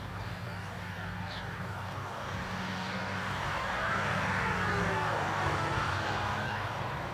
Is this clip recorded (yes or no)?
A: no